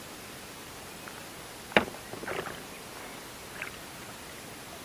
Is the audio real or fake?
real